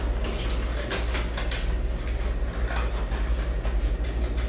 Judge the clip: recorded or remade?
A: recorded